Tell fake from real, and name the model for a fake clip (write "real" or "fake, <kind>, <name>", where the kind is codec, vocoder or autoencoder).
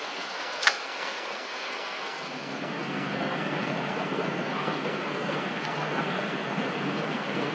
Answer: fake, codec, SNAC